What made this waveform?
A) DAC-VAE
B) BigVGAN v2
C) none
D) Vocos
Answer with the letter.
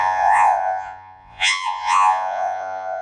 D